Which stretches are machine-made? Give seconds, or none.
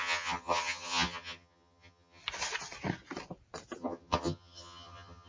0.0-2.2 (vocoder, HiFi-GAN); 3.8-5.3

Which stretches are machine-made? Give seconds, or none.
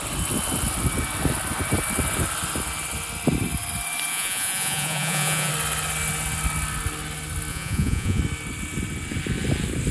4.1-5.5 (vocoder, Vocos); 7.5-8.2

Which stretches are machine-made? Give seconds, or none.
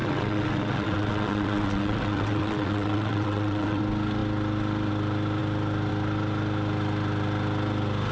0.0-3.8 (vocoder, WaveNeXt)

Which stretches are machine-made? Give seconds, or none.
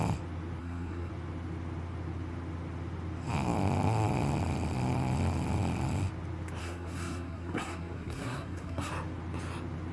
0.6-1.1 (codec, SNAC); 6.6-8.9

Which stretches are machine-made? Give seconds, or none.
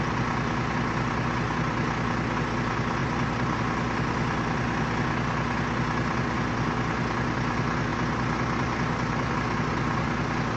none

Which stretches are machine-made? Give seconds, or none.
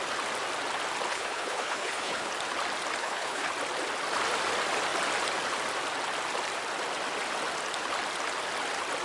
1.1-2.3 (codec, HILCodec); 3.0-3.5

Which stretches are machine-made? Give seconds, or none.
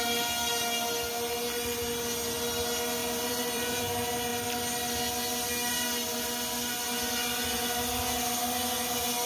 3.0-3.8 (vocoder, BigVGAN v2)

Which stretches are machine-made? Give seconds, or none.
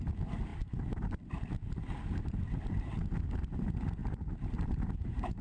4.0-5.4 (vocoder, BigVGAN v2)